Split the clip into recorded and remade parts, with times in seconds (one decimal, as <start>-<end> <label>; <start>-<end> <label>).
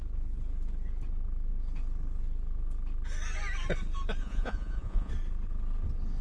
0.0-4.2 recorded; 4.2-5.1 remade; 5.1-6.2 recorded